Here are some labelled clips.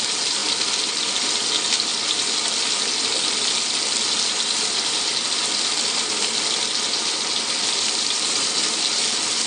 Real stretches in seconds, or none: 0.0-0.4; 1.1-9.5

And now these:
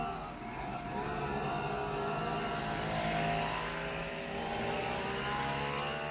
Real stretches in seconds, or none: 0.0-0.7; 1.5-6.1

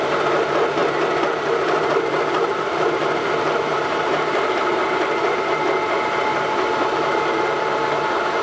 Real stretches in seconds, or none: 0.0-0.8; 5.4-6.3; 8.0-8.4